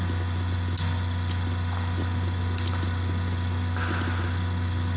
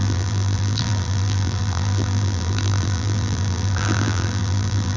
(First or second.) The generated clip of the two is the second